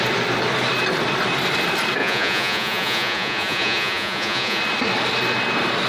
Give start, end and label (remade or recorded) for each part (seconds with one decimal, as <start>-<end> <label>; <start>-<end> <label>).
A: 0.0-2.0 recorded; 2.0-4.6 remade; 4.6-5.9 recorded